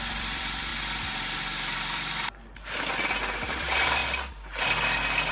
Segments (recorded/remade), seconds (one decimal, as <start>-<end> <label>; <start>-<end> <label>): 0.0-0.7 remade; 0.7-3.6 recorded; 3.6-4.0 remade; 4.0-5.3 recorded